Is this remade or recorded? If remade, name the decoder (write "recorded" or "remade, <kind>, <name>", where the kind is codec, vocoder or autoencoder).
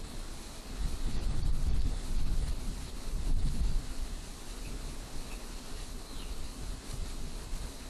remade, codec, HILCodec